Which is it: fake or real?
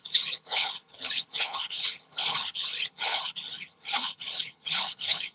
fake